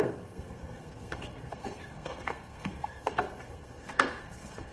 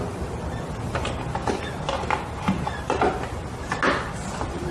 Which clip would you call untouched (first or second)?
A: second